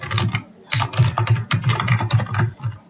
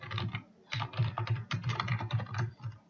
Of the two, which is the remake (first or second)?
first